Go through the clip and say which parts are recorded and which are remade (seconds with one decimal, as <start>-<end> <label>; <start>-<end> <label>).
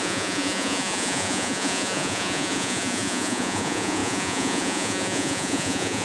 0.0-6.0 remade